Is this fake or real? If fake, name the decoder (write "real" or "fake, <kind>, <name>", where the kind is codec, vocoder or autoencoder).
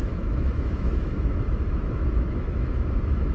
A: fake, autoencoder, DAC-VAE